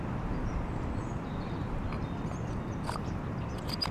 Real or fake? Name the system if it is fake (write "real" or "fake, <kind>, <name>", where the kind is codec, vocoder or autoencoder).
real